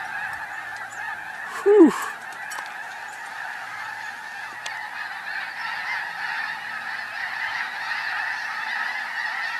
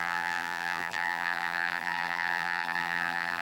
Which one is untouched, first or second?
first